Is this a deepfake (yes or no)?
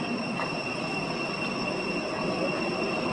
no